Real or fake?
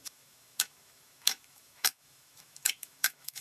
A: fake